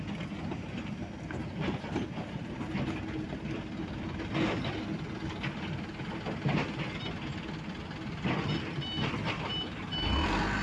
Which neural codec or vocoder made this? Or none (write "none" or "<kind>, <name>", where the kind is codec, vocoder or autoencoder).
none